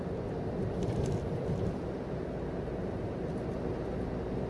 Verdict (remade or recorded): recorded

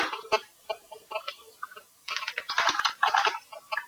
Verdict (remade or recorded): remade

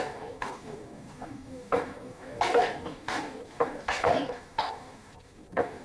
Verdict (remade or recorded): remade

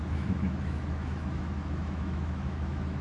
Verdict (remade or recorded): remade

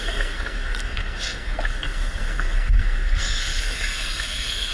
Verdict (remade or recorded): remade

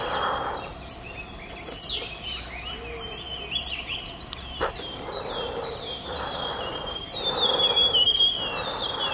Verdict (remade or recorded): remade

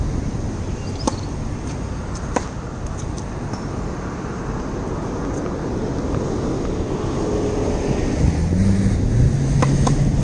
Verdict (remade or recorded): recorded